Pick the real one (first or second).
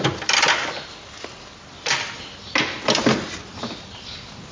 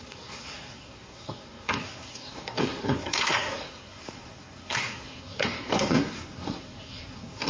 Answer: first